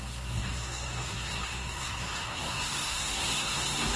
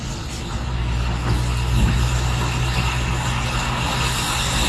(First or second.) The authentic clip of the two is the second